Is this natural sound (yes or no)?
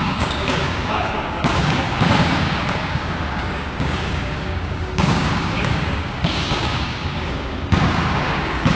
no